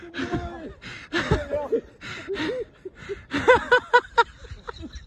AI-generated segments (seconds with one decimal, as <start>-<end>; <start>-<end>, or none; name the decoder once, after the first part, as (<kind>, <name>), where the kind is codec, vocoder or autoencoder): none